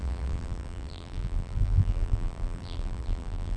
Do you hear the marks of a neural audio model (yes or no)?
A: yes